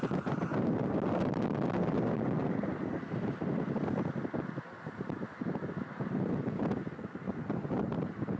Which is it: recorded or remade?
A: recorded